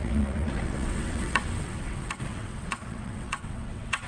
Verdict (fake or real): fake